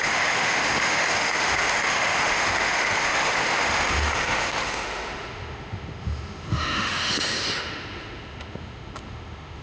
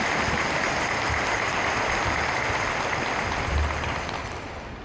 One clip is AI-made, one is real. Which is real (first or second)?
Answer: second